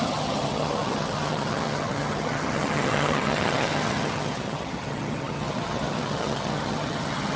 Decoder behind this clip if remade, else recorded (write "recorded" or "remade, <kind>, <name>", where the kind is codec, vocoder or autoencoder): remade, vocoder, HiFi-GAN